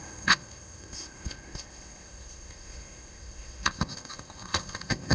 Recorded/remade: remade